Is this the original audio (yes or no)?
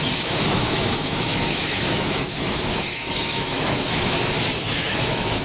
no